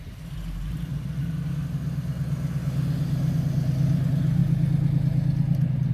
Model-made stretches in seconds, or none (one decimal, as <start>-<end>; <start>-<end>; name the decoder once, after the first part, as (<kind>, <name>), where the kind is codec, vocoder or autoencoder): 0.0-1.2 (vocoder, BigVGAN v2); 3.9-4.4